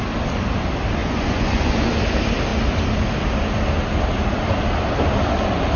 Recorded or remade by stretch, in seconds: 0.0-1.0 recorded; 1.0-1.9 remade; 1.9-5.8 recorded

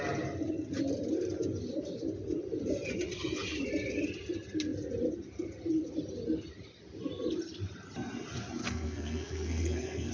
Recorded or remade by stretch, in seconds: 0.0-8.6 recorded; 8.6-10.1 remade

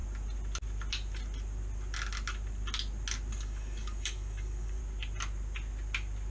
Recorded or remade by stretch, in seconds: 0.0-3.3 recorded; 3.3-4.8 remade; 4.8-6.3 recorded

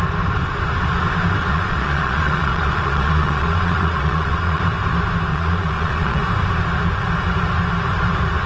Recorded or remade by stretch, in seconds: 0.0-1.5 recorded; 1.5-4.6 remade; 4.6-5.3 recorded; 5.3-6.2 remade; 6.2-8.5 recorded

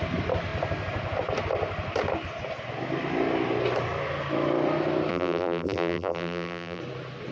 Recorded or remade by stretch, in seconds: 0.0-5.1 recorded; 5.1-6.8 remade; 6.8-7.3 recorded